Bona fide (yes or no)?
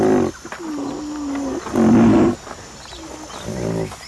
yes